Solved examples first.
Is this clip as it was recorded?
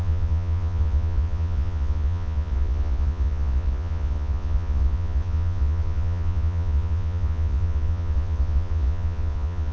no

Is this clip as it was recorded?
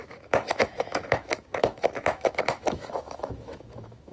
no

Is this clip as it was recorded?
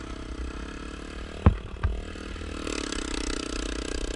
yes